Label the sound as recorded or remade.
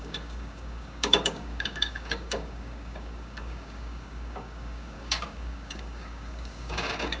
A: remade